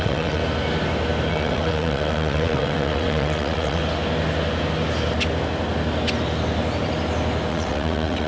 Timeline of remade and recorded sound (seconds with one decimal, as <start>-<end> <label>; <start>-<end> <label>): 0.0-0.4 remade; 0.4-1.3 recorded; 1.3-3.8 remade; 3.8-7.5 recorded; 7.5-8.3 remade